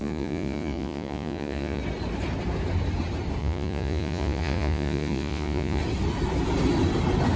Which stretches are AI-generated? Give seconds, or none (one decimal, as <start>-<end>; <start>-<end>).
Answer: 0.0-1.8; 3.4-5.8